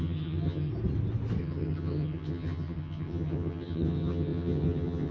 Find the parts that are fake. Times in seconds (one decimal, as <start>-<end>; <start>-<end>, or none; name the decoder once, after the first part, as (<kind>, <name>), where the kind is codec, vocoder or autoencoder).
0.0-0.7 (vocoder, HiFi-GAN); 1.4-5.1